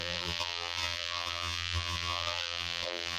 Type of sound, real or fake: fake